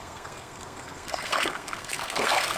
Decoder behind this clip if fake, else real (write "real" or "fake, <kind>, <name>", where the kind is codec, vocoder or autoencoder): fake, codec, SNAC